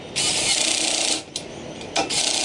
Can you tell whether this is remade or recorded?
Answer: recorded